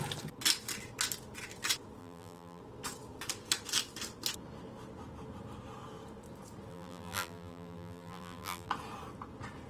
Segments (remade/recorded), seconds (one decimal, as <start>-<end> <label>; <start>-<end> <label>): 0.0-2.0 recorded; 2.0-2.6 remade; 2.6-6.7 recorded; 6.7-8.7 remade; 8.7-9.7 recorded